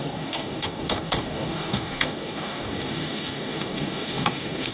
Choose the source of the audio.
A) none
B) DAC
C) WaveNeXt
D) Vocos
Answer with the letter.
B